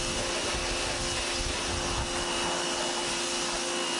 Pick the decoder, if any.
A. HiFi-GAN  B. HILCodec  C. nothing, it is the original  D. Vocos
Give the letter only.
C